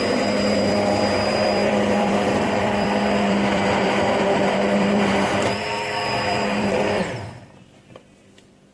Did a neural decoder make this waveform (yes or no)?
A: yes